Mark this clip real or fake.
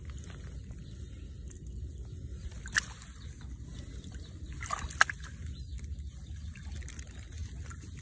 real